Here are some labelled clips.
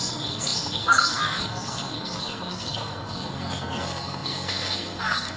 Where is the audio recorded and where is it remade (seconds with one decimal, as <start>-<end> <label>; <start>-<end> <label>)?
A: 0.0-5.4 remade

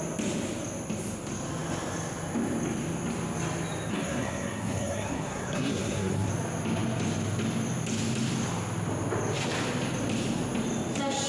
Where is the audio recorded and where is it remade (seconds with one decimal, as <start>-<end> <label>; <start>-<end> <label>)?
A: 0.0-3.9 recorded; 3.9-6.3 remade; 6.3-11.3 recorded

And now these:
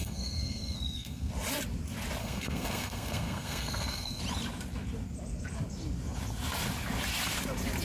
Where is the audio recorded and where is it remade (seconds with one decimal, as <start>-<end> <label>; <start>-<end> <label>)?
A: 0.0-1.3 remade; 1.3-2.2 recorded; 2.2-4.2 remade; 4.2-7.8 recorded

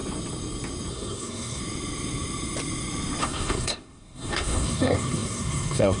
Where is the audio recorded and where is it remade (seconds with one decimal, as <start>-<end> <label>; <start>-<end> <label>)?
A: 0.0-0.9 recorded; 0.9-1.6 remade; 1.6-3.2 recorded; 3.2-6.0 remade

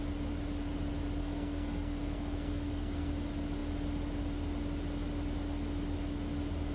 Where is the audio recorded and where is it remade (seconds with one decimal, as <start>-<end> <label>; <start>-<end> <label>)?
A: 0.0-1.2 recorded; 1.2-3.1 remade; 3.1-6.7 recorded